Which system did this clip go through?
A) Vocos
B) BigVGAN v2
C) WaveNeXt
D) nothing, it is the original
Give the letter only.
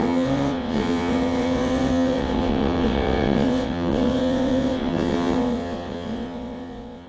C